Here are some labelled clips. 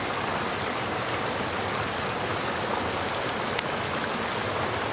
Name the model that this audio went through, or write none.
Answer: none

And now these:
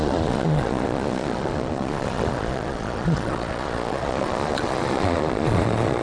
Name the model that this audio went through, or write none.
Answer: vocoder, Vocos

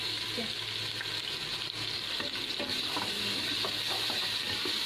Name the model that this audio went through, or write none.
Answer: none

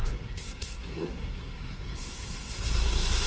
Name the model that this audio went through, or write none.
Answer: codec, SNAC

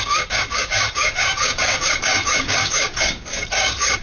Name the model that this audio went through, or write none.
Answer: codec, DAC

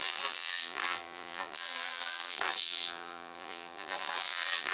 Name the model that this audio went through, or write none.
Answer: vocoder, BigVGAN v2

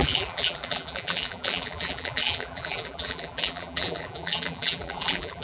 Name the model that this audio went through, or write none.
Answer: vocoder, BigVGAN v2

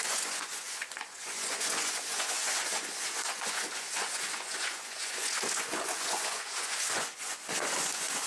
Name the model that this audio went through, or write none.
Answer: vocoder, Vocos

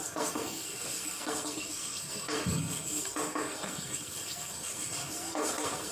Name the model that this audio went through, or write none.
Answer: codec, SNAC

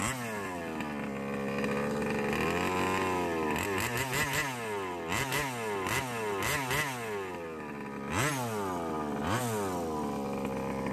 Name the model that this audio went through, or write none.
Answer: none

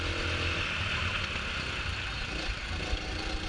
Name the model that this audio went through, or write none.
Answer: none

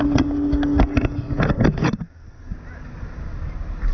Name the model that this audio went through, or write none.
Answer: none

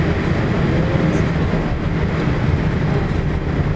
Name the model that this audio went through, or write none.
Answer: none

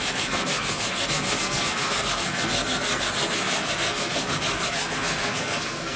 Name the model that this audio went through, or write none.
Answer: codec, SNAC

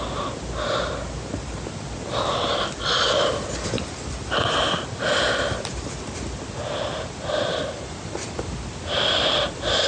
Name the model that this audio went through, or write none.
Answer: none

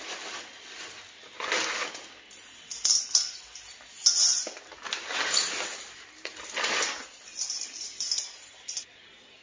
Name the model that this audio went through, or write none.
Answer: none